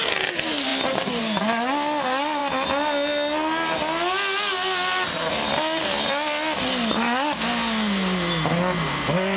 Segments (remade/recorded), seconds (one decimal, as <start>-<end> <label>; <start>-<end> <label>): 0.0-9.4 recorded